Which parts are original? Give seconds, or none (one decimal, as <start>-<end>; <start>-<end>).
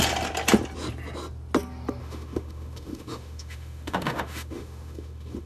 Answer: 0.0-2.0